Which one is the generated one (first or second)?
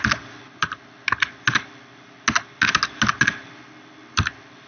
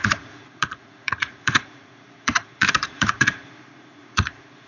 second